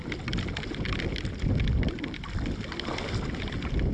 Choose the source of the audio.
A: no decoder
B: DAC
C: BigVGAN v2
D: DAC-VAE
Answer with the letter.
A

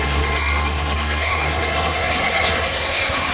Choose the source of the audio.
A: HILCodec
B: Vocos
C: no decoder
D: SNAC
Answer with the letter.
D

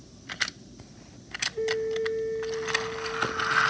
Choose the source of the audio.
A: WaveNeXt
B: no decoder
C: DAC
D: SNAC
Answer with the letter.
B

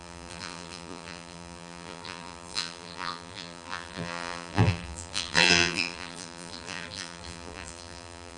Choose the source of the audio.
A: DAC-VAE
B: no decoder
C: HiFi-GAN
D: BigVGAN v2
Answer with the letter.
D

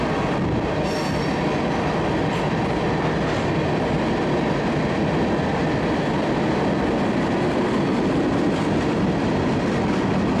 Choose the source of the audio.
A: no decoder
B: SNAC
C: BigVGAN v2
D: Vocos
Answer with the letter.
A